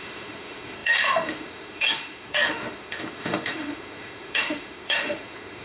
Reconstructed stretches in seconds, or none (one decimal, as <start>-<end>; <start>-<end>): 0.0-5.6